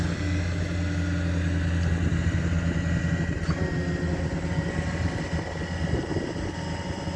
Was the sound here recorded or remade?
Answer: recorded